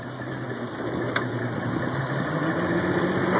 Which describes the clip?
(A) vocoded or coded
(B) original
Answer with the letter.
B